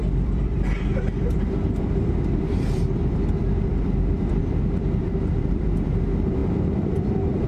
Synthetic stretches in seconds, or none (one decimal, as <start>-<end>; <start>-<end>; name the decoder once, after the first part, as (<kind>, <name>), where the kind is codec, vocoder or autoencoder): 0.0-7.5 (vocoder, BigVGAN v2)